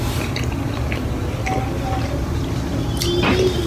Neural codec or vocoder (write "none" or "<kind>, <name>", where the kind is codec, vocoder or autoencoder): none